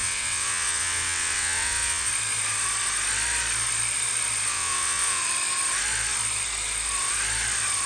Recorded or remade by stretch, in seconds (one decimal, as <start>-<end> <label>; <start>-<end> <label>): 0.0-2.1 remade; 2.1-4.5 recorded; 4.5-5.2 remade; 5.2-7.9 recorded